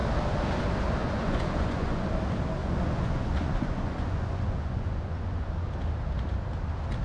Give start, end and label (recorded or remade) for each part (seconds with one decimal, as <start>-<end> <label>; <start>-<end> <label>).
0.0-1.0 recorded; 1.0-2.1 remade; 2.1-2.6 recorded; 2.6-5.7 remade; 5.7-7.0 recorded